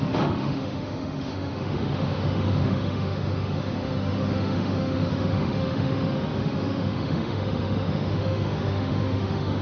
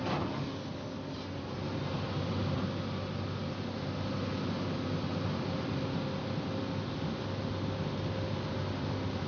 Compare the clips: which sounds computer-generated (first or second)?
first